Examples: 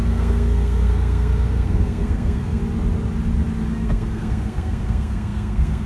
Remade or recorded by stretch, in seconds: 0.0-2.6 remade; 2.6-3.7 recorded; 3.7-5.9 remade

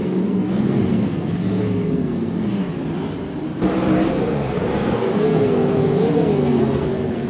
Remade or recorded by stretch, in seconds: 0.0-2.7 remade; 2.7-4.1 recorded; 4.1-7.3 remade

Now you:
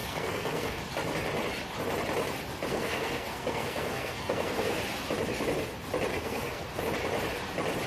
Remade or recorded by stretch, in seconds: 0.0-0.8 remade; 0.8-2.7 recorded; 2.7-4.8 remade; 4.8-6.1 recorded; 6.1-6.8 remade; 6.8-7.9 recorded

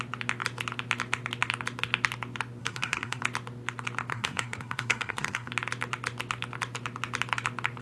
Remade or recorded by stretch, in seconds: 0.0-2.6 recorded; 2.6-3.2 remade; 3.2-4.1 recorded; 4.1-5.5 remade; 5.5-7.8 recorded